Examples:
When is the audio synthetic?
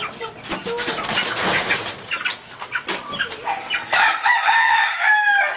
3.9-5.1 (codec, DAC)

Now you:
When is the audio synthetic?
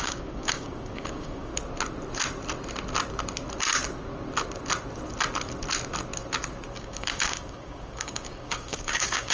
0.0-1.5 (codec, DAC); 6.7-9.3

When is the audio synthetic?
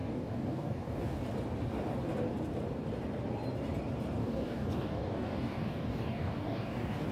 0.0-1.2 (codec, DAC); 4.2-7.1